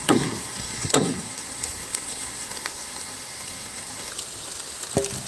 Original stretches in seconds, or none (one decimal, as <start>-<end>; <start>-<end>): 4.1-5.3